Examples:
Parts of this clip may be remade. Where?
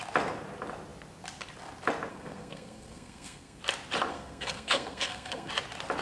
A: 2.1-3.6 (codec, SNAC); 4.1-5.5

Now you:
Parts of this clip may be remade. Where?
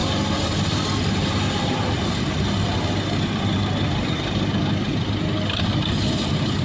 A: 0.0-4.0 (vocoder, BigVGAN v2)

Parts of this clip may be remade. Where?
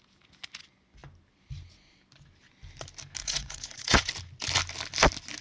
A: 3.2-4.1 (vocoder, Vocos)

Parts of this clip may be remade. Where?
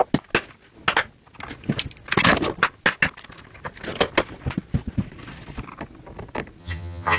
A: 6.6-7.2 (vocoder, HiFi-GAN)